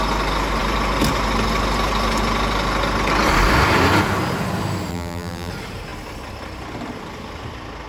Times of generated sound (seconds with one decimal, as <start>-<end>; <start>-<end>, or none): 4.9-5.5